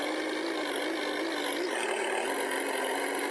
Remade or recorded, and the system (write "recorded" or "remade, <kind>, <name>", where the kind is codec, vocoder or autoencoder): recorded